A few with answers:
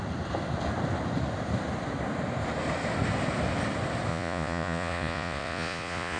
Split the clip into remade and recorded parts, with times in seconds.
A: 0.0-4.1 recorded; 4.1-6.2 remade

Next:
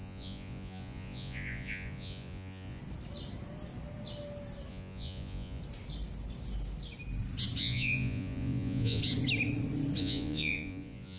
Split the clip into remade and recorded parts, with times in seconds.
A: 0.0-2.8 remade; 2.8-4.7 recorded; 4.7-5.6 remade; 5.6-7.6 recorded; 7.6-9.0 remade; 9.0-10.0 recorded; 10.0-11.2 remade

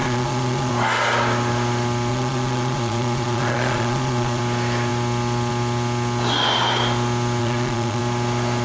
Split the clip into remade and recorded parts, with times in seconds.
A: 0.0-0.7 remade; 0.7-2.1 recorded; 2.1-4.4 remade; 4.4-7.4 recorded; 7.4-8.0 remade; 8.0-8.6 recorded

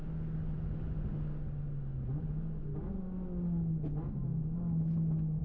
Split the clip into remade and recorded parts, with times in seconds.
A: 0.0-5.4 recorded